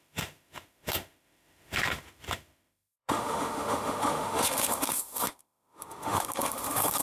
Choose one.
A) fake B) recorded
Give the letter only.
A